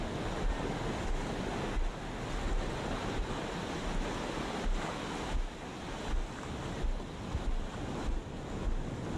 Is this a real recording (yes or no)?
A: yes